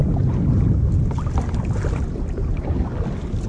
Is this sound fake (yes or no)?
no